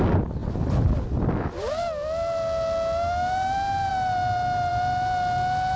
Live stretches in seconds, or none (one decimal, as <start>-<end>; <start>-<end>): 0.0-5.8